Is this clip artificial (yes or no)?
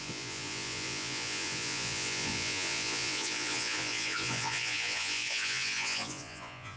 yes